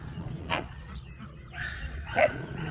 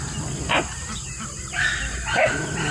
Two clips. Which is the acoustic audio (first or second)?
second